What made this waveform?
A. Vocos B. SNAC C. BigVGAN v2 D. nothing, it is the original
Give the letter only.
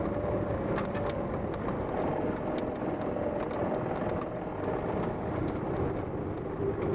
D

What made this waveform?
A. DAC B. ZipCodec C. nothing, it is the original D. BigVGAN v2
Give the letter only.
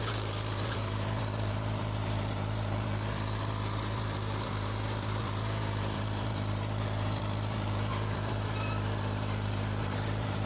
D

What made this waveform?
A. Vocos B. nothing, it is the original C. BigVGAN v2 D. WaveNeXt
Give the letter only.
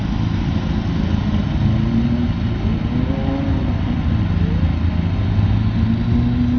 B